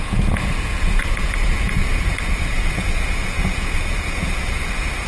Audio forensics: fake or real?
fake